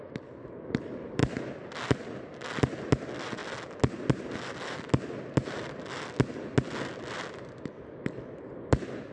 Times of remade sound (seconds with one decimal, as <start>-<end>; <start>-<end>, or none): none